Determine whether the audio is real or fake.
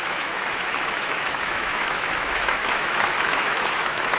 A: fake